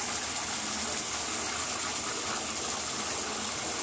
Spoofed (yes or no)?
no